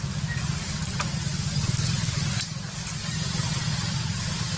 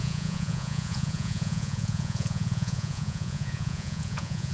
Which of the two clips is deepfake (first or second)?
second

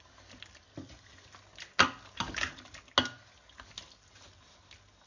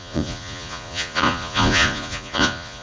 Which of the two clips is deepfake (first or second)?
second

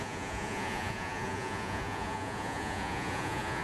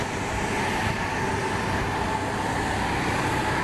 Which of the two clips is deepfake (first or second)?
first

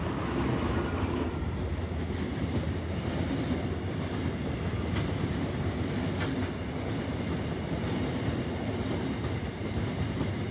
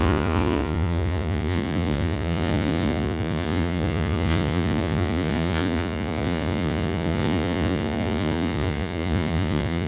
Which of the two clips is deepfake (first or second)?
second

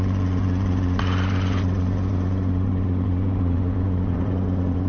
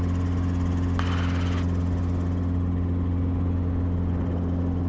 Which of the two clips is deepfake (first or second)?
first